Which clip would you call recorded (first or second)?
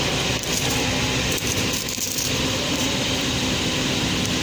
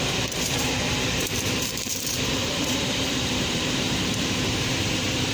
first